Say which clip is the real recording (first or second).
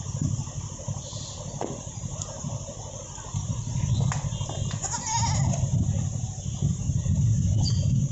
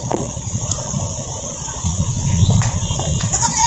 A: first